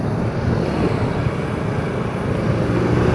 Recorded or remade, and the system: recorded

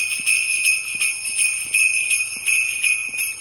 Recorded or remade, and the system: recorded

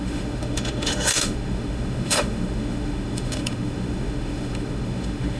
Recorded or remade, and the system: remade, autoencoder, DAC-VAE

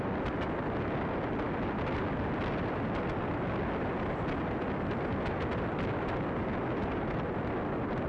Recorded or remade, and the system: recorded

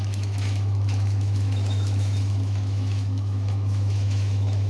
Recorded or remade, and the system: remade, autoencoder, DAC-VAE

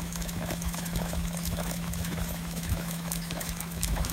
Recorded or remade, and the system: remade, autoencoder, DAC-VAE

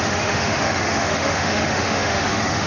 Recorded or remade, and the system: remade, autoencoder, DAC-VAE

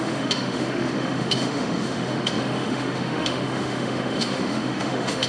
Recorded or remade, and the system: remade, autoencoder, DAC-VAE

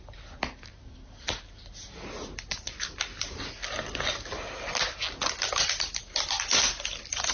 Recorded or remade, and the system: recorded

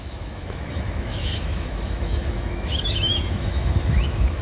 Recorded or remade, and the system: remade, autoencoder, DAC-VAE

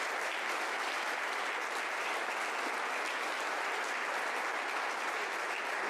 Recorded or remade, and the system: recorded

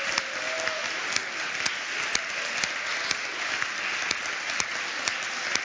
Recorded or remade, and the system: recorded